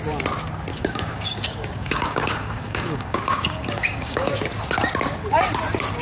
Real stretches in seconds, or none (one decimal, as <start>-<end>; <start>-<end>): 0.0-0.7; 4.3-6.0